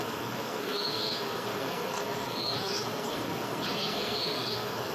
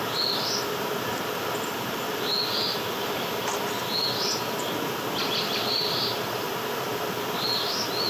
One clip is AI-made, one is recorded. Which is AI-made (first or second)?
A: first